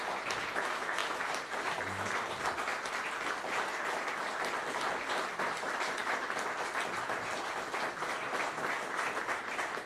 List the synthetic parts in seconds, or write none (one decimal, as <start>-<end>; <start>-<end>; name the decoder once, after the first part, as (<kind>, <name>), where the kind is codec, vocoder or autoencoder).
none